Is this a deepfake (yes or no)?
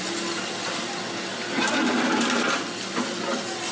no